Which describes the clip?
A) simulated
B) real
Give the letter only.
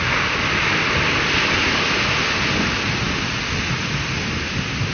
B